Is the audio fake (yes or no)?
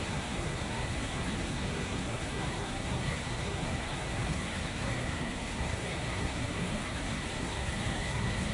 yes